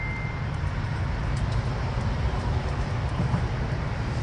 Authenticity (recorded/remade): recorded